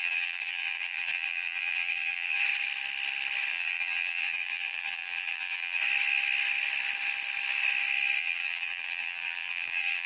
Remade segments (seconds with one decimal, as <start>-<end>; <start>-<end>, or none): 0.0-2.4; 3.5-5.8; 8.2-10.1